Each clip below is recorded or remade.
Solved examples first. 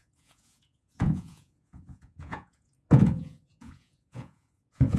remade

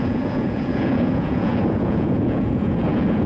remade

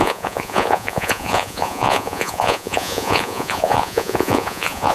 remade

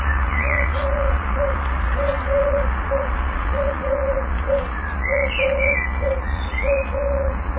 remade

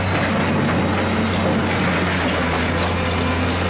recorded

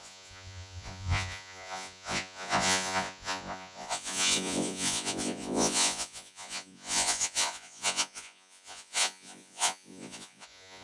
remade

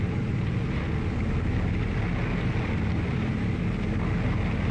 recorded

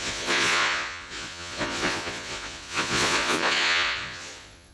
remade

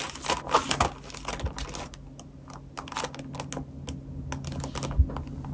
recorded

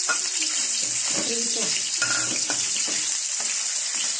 recorded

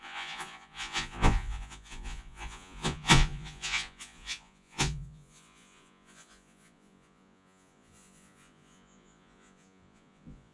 remade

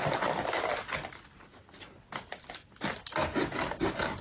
recorded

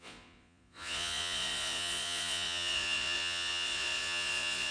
remade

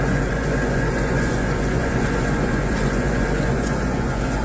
remade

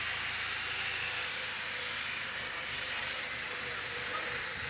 recorded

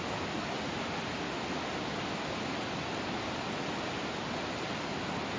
recorded